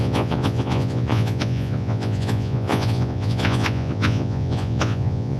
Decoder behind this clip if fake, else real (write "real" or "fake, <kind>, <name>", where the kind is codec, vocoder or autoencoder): fake, vocoder, Vocos